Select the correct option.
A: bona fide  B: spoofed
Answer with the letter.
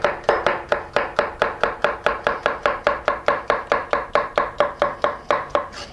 A